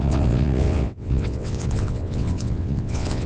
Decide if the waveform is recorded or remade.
remade